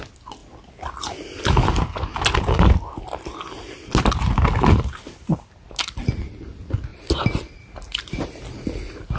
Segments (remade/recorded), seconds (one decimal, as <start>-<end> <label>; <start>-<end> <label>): 0.0-6.9 recorded; 6.9-8.4 remade; 8.4-9.2 recorded